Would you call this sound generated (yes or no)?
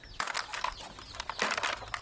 no